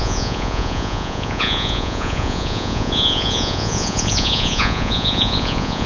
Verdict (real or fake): fake